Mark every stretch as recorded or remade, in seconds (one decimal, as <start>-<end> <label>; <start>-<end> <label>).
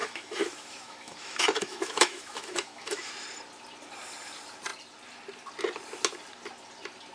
0.0-3.1 remade; 3.1-7.1 recorded